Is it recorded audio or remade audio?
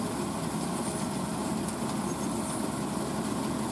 recorded